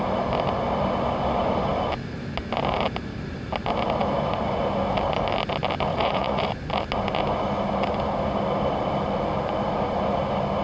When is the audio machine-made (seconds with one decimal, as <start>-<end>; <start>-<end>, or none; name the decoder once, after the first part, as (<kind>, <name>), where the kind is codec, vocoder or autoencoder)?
5.9-6.5 (vocoder, Vocos)

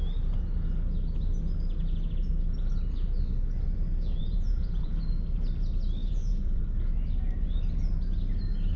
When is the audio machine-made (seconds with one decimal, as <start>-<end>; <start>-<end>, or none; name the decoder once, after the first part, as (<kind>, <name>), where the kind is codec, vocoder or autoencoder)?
4.2-5.0 (vocoder, Vocos); 6.0-6.6

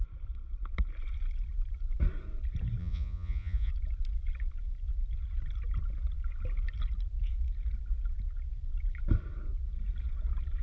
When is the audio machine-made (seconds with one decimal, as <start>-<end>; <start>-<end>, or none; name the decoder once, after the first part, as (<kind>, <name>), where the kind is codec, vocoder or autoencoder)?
2.8-3.7 (vocoder, Vocos)

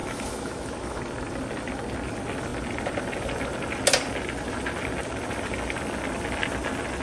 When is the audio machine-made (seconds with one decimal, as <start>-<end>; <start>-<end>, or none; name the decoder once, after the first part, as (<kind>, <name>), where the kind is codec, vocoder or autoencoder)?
0.0-1.0 (autoencoder, DAC-VAE)

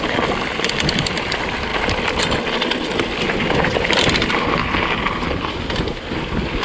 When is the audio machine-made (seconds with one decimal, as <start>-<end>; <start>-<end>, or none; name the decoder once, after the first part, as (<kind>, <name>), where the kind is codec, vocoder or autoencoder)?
0.0-1.7 (vocoder, BigVGAN v2); 3.0-4.6; 5.5-6.6